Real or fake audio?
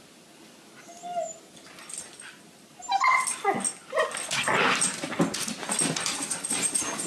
real